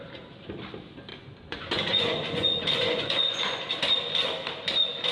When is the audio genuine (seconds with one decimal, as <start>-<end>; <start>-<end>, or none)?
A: 0.0-1.1; 3.6-5.1